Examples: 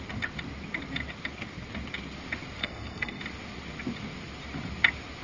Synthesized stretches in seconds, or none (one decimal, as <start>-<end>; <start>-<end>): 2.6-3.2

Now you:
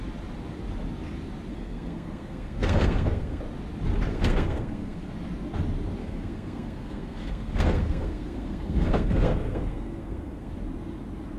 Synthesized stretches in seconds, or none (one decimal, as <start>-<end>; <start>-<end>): 1.5-3.4; 4.1-5.1; 6.0-10.5

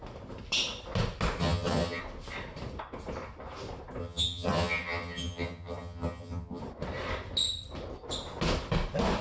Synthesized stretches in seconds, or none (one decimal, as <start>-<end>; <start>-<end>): 1.4-2.0; 4.0-6.6